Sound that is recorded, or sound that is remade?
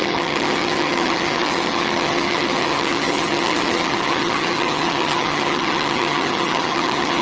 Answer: remade